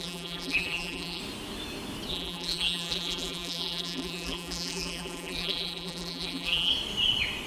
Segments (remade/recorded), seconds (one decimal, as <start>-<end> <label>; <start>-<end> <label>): 0.0-1.2 remade; 1.2-2.1 recorded; 2.1-6.7 remade; 6.7-7.5 recorded